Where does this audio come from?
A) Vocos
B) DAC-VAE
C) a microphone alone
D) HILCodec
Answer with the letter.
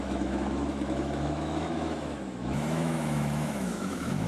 B